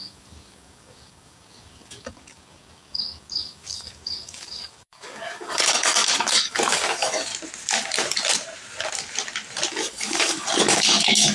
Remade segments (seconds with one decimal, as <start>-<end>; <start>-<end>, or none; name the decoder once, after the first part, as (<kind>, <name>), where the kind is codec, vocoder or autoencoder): 0.0-7.3 (codec, DAC); 9.7-11.3